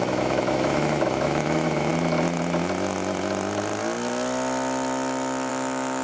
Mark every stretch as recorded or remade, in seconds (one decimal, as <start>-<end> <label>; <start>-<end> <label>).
0.0-1.9 remade; 1.9-5.5 recorded; 5.5-6.0 remade